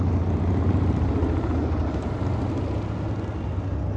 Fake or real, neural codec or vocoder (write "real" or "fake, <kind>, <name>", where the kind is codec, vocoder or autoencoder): real